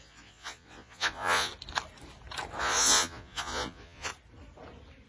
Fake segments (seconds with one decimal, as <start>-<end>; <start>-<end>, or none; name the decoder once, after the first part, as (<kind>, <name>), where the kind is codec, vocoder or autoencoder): 0.0-1.5 (vocoder, Vocos); 2.6-4.1